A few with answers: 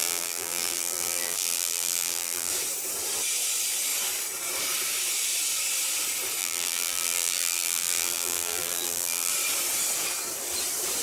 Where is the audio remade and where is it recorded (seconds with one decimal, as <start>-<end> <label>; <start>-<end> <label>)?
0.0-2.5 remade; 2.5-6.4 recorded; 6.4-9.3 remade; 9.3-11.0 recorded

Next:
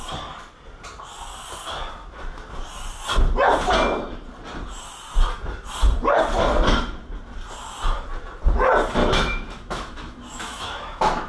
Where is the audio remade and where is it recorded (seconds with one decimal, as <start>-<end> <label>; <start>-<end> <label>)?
0.0-9.0 recorded; 9.0-11.3 remade

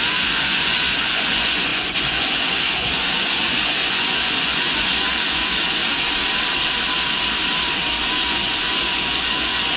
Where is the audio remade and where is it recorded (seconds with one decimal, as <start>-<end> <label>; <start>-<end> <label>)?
0.0-5.8 remade; 5.8-8.1 recorded; 8.1-9.8 remade

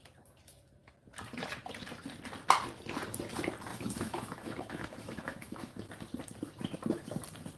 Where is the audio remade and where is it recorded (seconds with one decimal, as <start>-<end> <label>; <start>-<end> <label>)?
0.0-3.7 recorded; 3.7-5.9 remade; 5.9-7.6 recorded

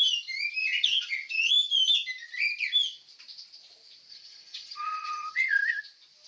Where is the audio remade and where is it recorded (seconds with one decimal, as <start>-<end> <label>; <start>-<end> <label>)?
0.0-0.6 recorded; 0.6-1.5 remade; 1.5-4.1 recorded; 4.1-5.8 remade; 5.8-6.3 recorded